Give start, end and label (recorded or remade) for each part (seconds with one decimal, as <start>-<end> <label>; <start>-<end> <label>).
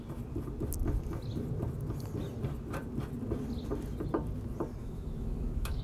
0.0-4.8 recorded; 4.8-5.8 remade